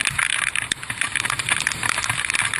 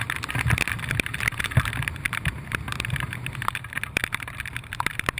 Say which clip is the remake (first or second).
second